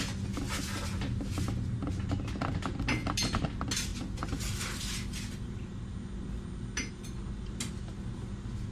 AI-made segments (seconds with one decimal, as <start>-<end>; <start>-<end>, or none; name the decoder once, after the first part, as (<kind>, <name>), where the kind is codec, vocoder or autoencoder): none